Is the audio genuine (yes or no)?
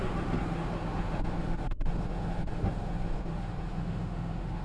no